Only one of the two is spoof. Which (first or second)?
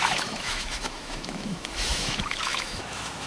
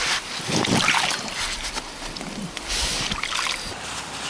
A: first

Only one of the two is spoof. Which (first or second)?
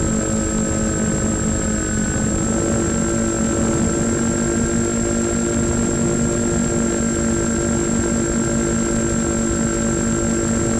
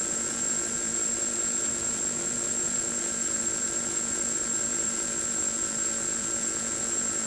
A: second